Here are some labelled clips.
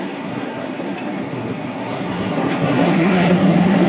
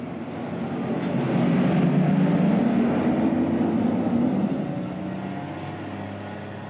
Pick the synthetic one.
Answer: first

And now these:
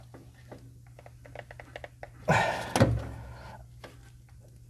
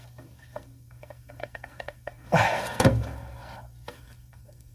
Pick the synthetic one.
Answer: second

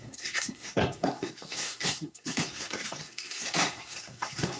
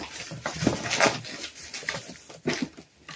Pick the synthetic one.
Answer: first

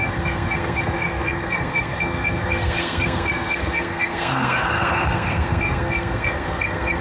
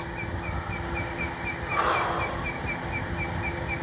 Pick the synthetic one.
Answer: first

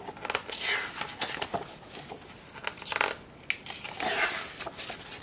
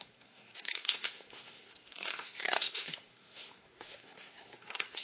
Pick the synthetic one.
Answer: second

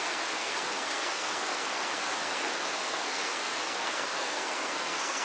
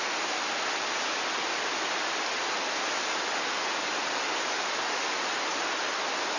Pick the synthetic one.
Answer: first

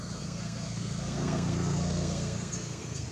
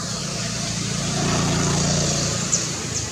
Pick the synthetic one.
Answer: first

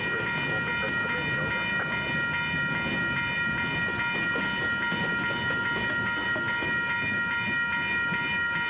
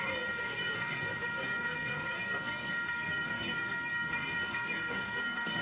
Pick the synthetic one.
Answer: second